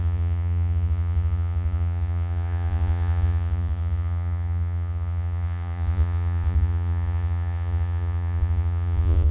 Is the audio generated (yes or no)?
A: yes